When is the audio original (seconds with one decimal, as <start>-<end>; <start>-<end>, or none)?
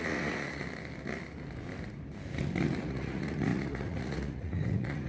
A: 0.6-2.8